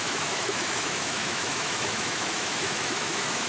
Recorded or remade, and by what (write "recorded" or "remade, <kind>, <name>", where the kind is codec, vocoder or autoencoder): remade, autoencoder, DAC-VAE